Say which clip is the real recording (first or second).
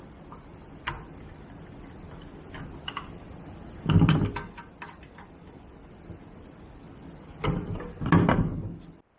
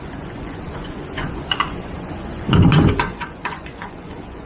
first